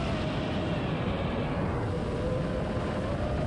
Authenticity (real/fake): real